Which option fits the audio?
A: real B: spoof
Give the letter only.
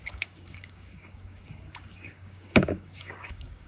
B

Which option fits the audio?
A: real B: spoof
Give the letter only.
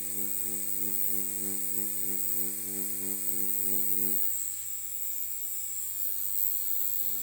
A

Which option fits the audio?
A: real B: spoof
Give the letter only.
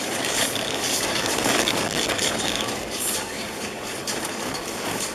B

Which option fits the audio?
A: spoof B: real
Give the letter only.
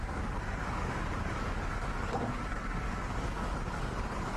A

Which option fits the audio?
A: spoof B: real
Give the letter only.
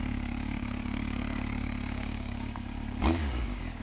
A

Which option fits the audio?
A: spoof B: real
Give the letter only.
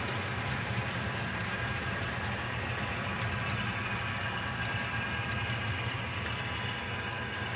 B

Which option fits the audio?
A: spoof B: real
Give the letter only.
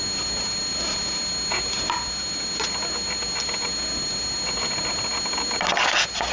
B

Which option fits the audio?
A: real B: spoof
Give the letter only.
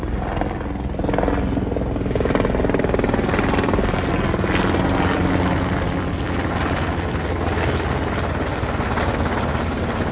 A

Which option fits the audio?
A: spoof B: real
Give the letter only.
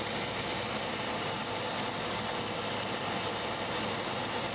B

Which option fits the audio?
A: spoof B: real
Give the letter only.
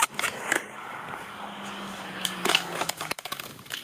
A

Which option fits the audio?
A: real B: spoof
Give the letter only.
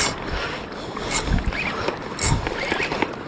A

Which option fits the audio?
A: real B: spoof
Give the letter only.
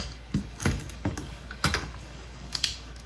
B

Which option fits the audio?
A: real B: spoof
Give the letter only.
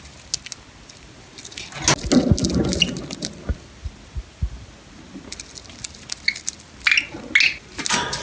A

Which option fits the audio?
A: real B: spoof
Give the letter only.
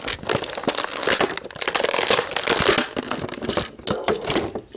A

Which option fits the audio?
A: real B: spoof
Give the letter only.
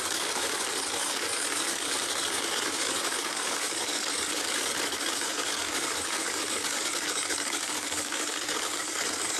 B